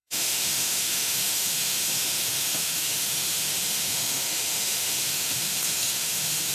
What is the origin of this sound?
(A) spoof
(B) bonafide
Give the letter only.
A